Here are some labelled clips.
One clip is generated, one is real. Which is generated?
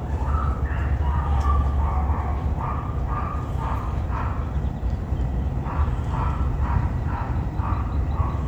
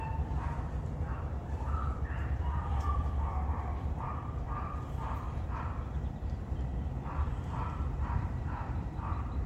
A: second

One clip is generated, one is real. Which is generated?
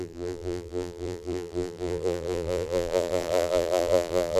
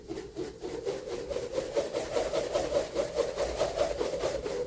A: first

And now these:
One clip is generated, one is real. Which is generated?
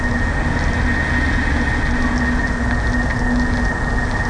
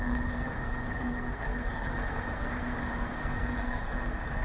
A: second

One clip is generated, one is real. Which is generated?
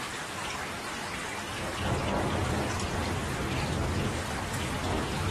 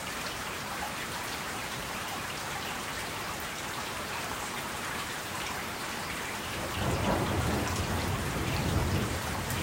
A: second